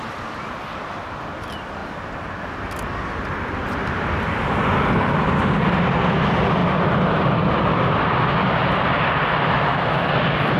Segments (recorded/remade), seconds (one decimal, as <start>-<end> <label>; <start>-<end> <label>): 0.0-1.8 remade; 1.8-3.9 recorded; 3.9-10.6 remade